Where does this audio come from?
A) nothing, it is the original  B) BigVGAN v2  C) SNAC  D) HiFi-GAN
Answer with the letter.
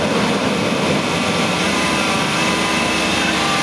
B